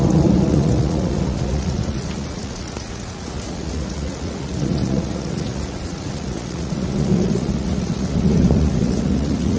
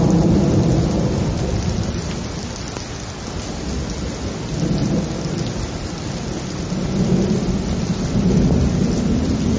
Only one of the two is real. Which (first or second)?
second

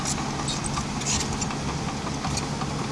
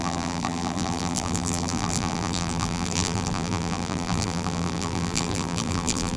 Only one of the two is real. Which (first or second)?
first